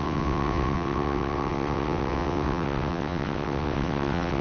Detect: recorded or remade remade